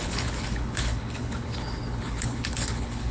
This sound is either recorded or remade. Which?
remade